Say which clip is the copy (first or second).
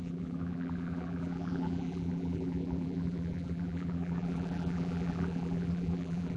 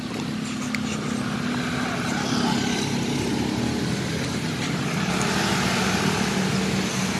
first